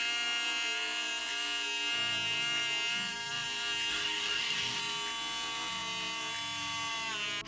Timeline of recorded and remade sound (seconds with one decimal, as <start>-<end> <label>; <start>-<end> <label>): 0.0-3.9 recorded; 3.9-4.8 remade; 4.8-7.5 recorded